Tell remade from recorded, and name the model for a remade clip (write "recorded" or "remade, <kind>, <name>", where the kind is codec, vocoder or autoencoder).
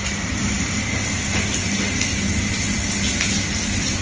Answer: recorded